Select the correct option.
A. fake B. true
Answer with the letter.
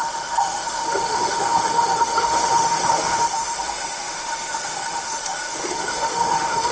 A